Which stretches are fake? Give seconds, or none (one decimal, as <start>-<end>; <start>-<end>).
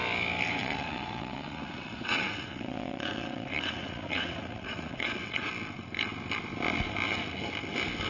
0.6-5.5